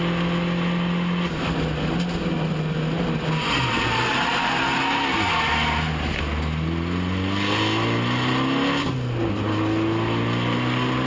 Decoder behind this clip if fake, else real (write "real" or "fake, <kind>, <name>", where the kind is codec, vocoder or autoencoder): real